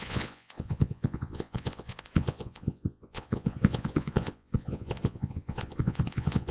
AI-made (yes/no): yes